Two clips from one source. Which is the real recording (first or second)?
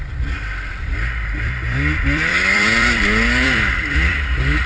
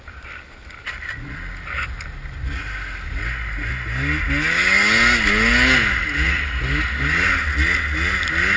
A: second